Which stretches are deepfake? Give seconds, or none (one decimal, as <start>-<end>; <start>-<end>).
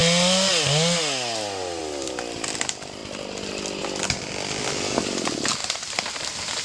none